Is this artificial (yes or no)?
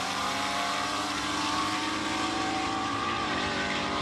yes